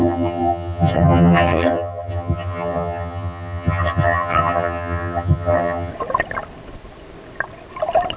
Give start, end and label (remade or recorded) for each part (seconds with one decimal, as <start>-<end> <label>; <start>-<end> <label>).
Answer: 0.0-5.9 remade; 5.9-8.2 recorded